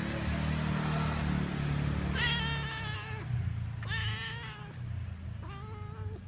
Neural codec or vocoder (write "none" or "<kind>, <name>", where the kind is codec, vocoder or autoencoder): none